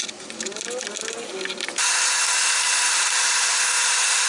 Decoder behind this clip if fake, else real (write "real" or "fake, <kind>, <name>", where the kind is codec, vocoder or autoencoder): real